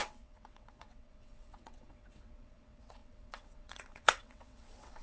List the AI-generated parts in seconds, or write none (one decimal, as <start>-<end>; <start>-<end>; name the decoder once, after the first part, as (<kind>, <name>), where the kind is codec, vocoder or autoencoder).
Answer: 0.0-5.0 (vocoder, WaveNeXt)